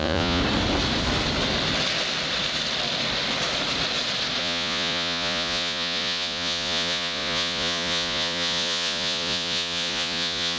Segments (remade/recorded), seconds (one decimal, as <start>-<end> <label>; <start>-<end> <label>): 0.0-0.4 remade; 0.4-4.4 recorded; 4.4-10.6 remade